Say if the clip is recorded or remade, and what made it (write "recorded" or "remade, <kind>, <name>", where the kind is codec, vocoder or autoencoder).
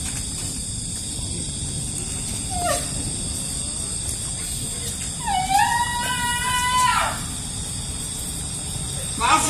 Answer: recorded